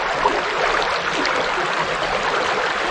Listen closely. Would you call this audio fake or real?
real